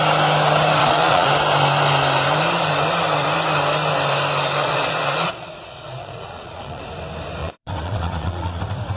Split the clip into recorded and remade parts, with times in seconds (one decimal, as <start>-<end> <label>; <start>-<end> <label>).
0.0-0.8 recorded; 0.8-1.3 remade; 1.3-4.6 recorded; 4.6-6.8 remade; 6.8-7.4 recorded; 7.4-8.6 remade; 8.6-9.0 recorded